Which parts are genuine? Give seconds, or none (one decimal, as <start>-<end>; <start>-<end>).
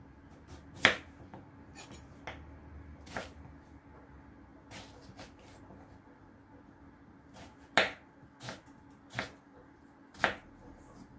0.0-11.2